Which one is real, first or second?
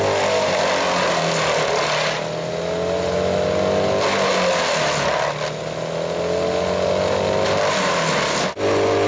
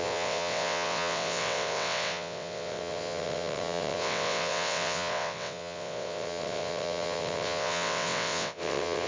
first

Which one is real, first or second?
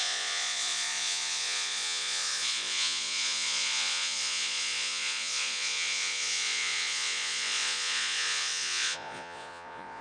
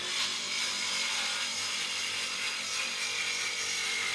second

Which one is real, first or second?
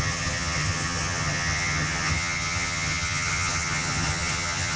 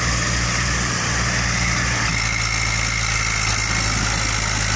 second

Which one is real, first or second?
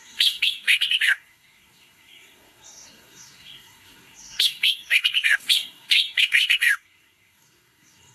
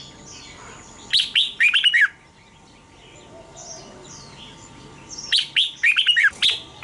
second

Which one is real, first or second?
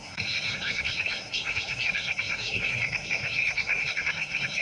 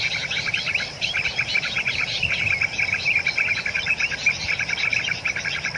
second